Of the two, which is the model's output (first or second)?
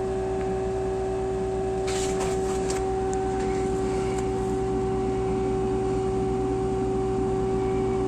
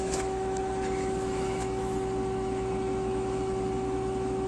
second